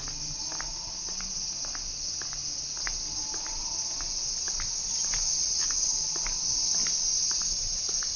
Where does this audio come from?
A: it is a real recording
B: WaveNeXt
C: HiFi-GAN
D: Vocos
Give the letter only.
A